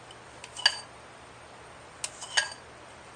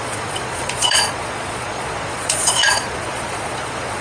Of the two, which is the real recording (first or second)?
first